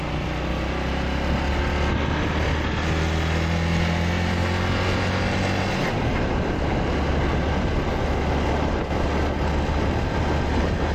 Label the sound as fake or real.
real